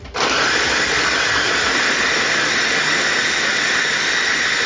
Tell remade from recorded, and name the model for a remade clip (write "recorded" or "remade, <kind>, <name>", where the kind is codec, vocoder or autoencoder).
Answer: recorded